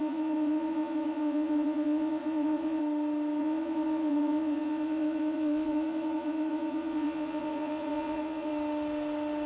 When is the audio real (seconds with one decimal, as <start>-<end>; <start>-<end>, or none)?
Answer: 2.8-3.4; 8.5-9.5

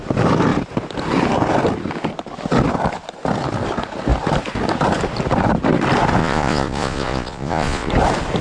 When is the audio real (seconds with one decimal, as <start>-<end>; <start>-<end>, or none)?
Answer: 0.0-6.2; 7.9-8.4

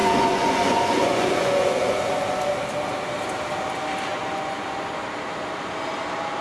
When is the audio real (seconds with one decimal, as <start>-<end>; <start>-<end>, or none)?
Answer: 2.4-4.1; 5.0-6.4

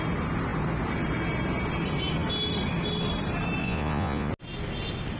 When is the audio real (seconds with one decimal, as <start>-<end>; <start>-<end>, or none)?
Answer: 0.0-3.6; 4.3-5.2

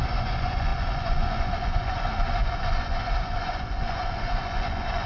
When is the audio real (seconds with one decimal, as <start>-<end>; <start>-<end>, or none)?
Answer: none

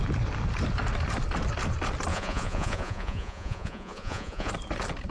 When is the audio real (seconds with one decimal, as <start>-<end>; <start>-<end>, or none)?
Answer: 0.0-2.1; 4.5-5.1